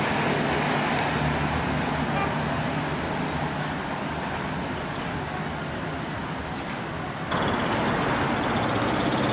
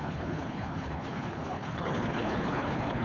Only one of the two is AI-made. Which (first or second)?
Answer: second